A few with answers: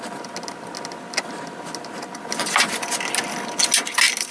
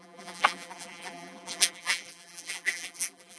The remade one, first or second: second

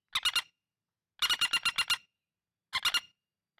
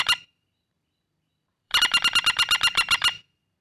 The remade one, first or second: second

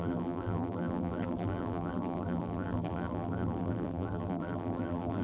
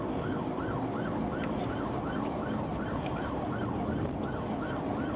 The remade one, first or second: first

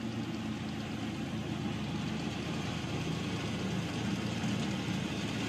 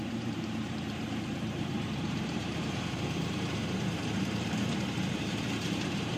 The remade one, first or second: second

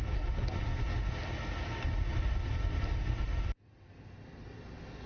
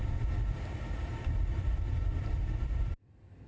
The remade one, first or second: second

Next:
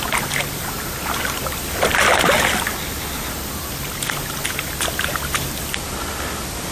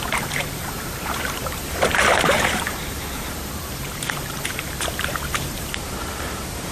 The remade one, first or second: second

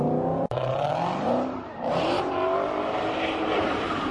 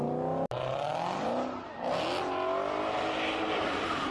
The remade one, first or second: first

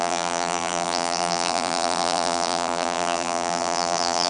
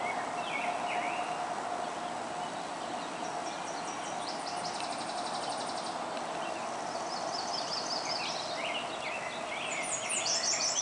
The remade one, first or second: first